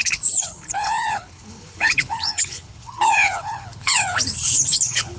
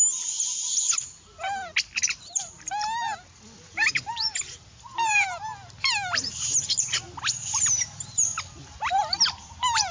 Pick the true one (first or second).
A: second